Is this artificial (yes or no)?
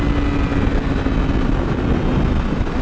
no